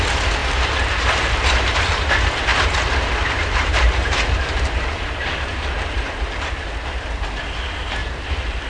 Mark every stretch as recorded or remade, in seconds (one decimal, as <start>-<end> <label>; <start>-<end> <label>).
0.0-0.4 recorded; 0.4-1.9 remade; 1.9-2.5 recorded; 2.5-6.7 remade; 6.7-8.0 recorded; 8.0-8.7 remade